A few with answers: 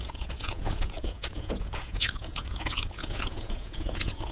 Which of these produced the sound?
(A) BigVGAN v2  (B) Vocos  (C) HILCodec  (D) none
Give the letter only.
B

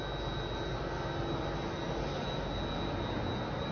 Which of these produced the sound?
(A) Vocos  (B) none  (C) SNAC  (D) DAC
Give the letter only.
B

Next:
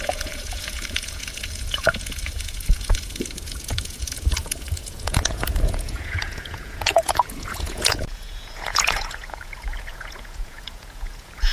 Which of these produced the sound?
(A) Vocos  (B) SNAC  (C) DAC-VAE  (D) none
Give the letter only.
A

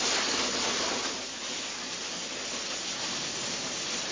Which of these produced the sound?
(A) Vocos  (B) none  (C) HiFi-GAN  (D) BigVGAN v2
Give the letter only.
B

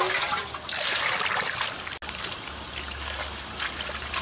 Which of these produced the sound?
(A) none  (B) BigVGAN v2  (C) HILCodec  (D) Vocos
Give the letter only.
A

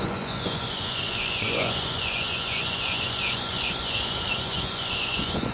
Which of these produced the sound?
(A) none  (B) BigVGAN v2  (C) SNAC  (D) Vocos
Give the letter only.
D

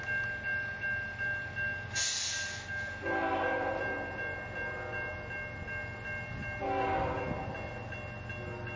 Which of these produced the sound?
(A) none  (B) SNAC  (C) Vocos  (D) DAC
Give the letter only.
A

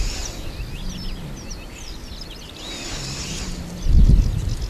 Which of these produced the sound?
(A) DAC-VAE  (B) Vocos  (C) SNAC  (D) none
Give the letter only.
D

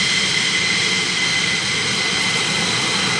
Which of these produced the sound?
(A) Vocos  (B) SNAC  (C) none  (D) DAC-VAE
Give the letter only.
C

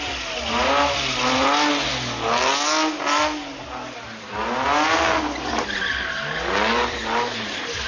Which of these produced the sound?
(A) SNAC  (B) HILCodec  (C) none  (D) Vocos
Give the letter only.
C